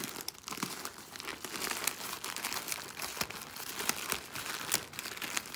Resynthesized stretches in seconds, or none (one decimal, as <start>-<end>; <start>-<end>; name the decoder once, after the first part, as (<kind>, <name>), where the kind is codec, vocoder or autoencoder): none